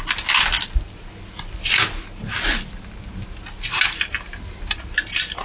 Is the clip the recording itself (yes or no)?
yes